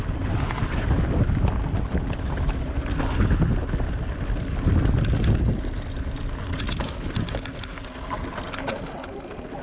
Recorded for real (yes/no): yes